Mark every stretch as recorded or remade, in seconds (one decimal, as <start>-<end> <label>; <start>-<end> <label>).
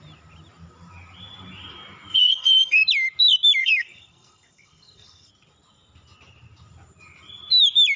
0.0-2.1 recorded; 2.1-2.8 remade; 2.8-3.6 recorded; 3.6-5.3 remade; 5.3-8.0 recorded